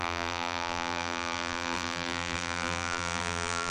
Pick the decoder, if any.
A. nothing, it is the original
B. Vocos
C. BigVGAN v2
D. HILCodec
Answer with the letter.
C